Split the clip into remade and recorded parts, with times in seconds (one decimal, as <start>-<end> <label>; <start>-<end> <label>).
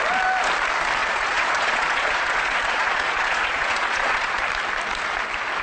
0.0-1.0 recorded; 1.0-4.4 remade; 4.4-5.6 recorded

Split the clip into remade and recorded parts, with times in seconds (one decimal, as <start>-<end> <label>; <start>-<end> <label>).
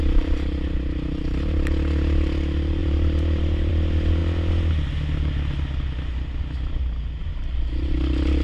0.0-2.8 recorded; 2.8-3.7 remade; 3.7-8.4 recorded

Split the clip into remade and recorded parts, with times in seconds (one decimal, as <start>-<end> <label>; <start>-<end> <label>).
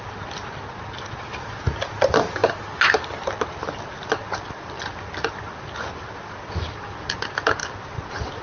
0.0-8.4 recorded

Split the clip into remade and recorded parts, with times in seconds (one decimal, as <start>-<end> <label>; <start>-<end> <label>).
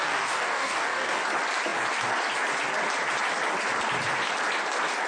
0.0-1.2 remade; 1.2-5.1 recorded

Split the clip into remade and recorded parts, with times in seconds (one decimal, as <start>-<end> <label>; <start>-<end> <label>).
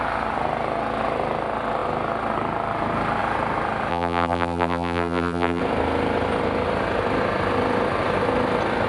0.0-3.9 recorded; 3.9-5.6 remade; 5.6-8.9 recorded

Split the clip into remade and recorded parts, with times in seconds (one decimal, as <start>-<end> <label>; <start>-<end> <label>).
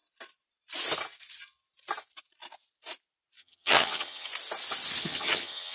0.0-3.4 recorded; 3.4-4.3 remade; 4.3-5.0 recorded; 5.0-5.7 remade